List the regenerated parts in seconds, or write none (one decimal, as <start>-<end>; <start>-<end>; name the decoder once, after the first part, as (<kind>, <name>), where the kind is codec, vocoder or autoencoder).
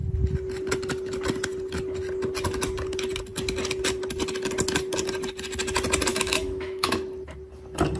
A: 6.1-7.0 (autoencoder, DAC-VAE)